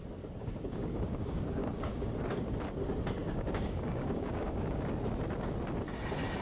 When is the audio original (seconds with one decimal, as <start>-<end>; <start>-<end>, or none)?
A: 0.0-0.4; 2.1-3.2; 4.8-6.4